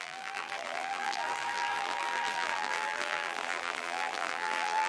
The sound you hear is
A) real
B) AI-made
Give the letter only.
B